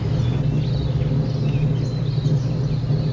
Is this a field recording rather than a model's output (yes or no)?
yes